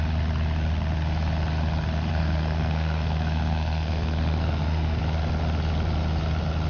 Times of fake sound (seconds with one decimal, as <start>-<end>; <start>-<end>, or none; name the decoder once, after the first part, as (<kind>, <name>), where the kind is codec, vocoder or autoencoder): 2.1-5.0 (codec, SNAC)